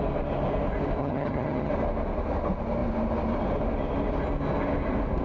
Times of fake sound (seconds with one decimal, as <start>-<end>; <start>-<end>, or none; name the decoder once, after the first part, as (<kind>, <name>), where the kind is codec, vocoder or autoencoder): 1.0-1.7 (vocoder, HiFi-GAN)